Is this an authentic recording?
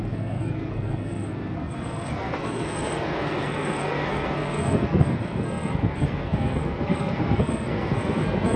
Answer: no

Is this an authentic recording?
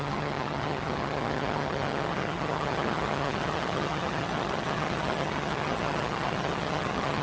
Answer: no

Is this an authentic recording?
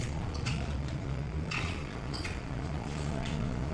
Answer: no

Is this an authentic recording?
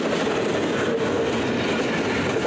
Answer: yes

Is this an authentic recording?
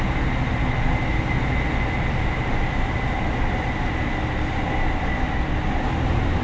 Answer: yes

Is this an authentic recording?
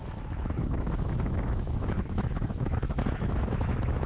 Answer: no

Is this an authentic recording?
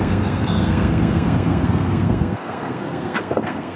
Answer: no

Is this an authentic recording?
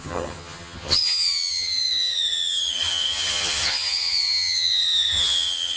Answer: no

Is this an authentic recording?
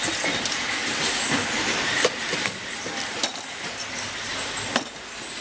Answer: yes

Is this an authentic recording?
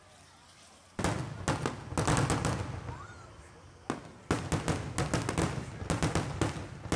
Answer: yes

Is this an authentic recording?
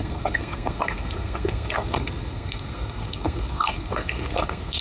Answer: no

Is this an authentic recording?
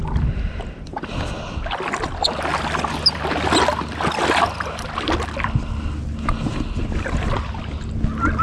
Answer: yes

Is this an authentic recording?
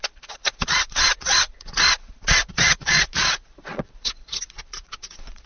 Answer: no